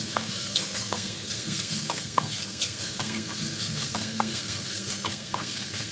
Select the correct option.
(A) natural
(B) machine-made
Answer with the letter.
B